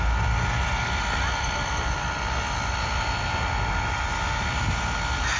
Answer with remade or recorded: recorded